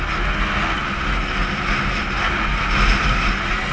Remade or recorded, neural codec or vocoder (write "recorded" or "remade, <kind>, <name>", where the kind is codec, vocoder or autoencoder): recorded